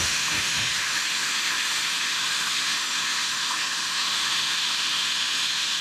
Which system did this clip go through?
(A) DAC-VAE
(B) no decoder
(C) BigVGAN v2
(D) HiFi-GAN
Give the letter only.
A